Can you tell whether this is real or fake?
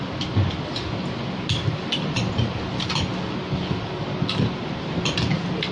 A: real